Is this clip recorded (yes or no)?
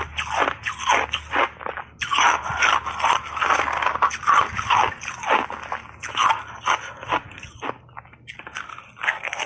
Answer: yes